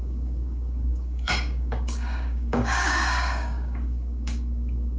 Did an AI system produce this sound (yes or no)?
yes